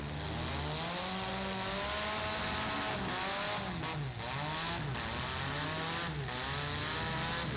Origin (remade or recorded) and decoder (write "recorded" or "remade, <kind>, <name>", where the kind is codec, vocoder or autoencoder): recorded